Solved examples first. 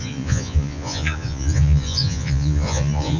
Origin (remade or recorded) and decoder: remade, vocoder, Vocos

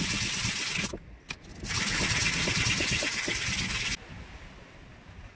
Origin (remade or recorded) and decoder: recorded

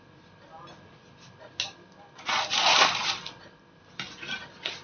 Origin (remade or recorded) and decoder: recorded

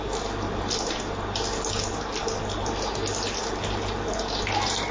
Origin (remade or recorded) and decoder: recorded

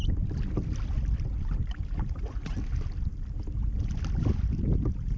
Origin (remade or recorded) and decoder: recorded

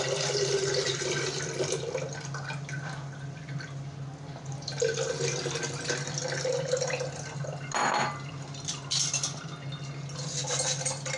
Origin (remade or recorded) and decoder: recorded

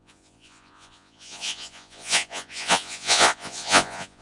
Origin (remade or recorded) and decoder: remade, vocoder, Vocos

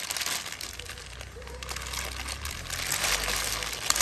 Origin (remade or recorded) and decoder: recorded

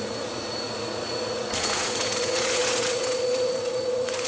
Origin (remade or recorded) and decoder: remade, vocoder, Vocos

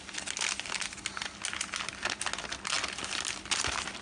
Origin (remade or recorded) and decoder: recorded